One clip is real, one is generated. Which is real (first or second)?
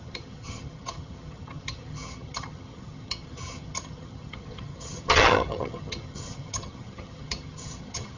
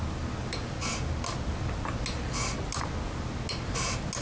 second